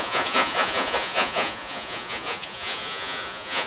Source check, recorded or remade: remade